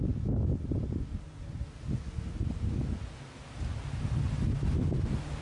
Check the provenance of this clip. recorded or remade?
recorded